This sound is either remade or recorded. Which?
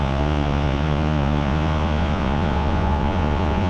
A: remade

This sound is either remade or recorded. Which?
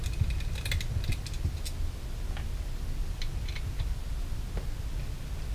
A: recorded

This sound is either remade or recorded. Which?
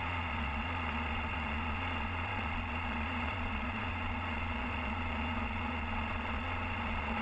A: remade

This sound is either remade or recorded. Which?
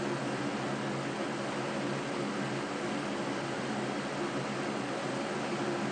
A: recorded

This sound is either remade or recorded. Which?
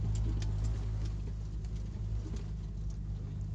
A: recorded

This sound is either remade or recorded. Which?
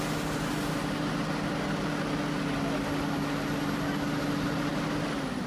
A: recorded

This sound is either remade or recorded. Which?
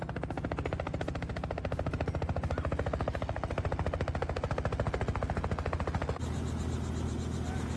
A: recorded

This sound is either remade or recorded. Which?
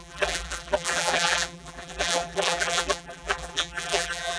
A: remade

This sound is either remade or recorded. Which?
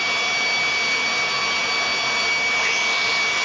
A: recorded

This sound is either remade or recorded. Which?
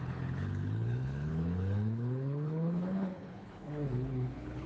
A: remade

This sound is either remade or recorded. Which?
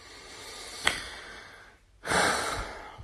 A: recorded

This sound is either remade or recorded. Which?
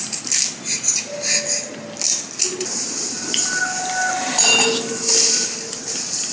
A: recorded